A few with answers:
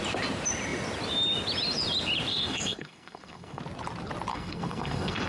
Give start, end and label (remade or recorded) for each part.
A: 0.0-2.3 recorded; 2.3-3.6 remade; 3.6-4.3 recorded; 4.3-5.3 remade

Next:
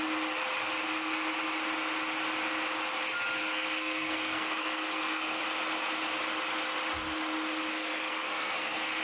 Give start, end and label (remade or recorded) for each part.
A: 0.0-3.4 recorded; 3.4-5.4 remade; 5.4-7.7 recorded; 7.7-9.0 remade

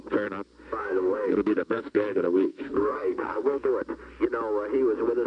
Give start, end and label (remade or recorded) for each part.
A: 0.0-0.8 recorded; 0.8-3.7 remade; 3.7-5.3 recorded

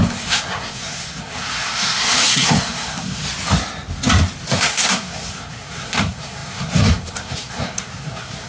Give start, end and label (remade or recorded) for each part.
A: 0.0-3.2 remade; 3.2-4.5 recorded; 4.5-8.5 remade